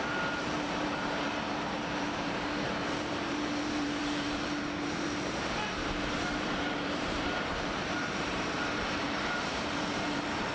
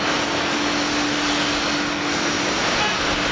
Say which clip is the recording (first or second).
second